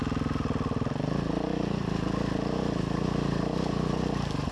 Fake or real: real